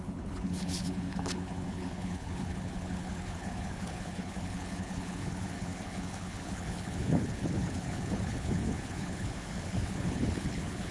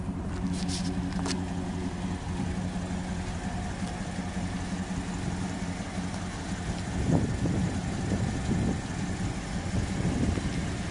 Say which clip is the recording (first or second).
second